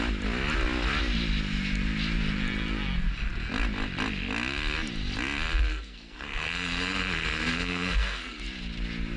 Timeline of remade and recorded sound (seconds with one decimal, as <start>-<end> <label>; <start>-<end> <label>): 0.0-5.7 recorded; 5.7-8.4 remade; 8.4-9.2 recorded